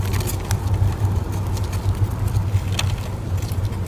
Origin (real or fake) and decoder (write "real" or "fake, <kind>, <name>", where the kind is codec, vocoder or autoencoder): real